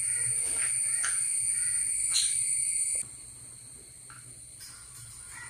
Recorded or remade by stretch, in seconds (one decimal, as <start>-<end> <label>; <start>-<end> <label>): 0.0-2.1 recorded; 2.1-5.5 remade